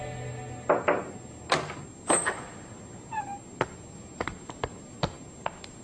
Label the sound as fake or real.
real